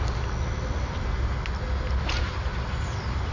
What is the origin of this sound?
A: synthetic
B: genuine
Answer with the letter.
B